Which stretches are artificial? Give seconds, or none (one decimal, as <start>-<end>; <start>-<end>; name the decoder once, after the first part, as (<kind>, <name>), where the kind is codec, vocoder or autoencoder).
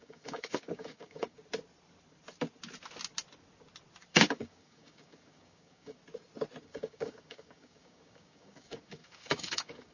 0.0-1.4 (codec, DAC); 4.1-6.0; 6.6-9.9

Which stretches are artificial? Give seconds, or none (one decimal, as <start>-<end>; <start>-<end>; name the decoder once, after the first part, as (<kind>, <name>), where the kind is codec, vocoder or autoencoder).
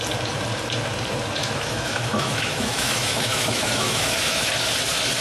1.4-4.5 (autoencoder, DAC-VAE)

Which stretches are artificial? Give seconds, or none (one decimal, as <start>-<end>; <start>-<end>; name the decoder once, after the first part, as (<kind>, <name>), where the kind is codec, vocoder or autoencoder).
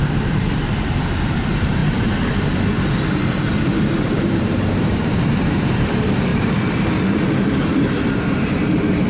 0.0-1.8 (vocoder, BigVGAN v2); 3.1-9.1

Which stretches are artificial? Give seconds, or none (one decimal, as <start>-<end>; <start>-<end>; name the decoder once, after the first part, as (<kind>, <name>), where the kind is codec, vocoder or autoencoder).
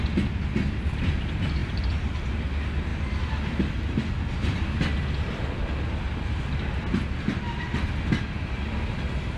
1.6-2.4 (vocoder, BigVGAN v2)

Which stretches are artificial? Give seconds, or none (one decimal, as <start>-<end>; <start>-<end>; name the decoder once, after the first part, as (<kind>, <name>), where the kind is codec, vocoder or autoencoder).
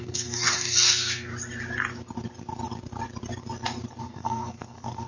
0.0-1.3 (codec, SNAC); 4.0-5.1